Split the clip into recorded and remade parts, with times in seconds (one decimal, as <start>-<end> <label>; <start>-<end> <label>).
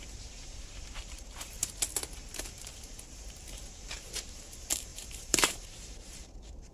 0.0-1.6 remade; 1.6-2.4 recorded; 2.4-6.7 remade